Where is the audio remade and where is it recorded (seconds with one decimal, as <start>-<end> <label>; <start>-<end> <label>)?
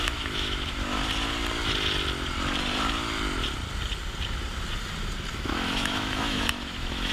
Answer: 0.0-1.0 remade; 1.0-5.3 recorded; 5.3-7.1 remade